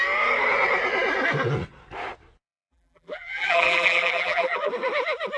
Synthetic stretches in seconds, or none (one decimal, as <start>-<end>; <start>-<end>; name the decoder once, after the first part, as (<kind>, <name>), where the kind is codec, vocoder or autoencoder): 2.4-4.7 (vocoder, BigVGAN v2)